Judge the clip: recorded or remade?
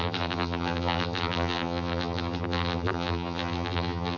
remade